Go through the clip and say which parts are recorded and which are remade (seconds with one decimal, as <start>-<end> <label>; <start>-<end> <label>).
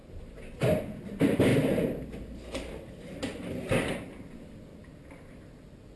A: 0.0-1.5 recorded; 1.5-3.2 remade; 3.2-4.7 recorded; 4.7-5.4 remade; 5.4-6.0 recorded